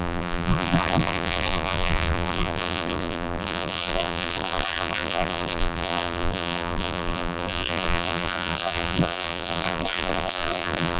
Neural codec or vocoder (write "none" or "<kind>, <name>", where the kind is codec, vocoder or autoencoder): vocoder, BigVGAN v2